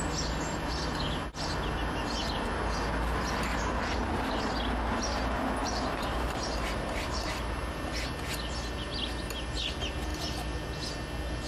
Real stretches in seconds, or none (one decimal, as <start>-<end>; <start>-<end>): 0.0-3.5; 4.4-5.6; 7.9-11.5